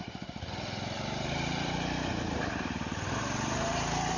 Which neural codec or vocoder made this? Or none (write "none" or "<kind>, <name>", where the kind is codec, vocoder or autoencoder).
vocoder, BigVGAN v2